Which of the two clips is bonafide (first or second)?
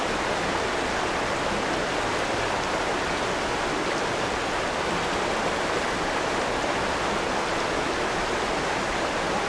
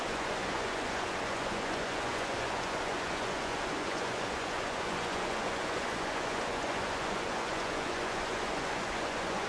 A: first